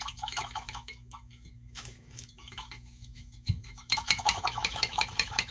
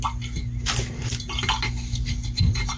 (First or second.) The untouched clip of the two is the second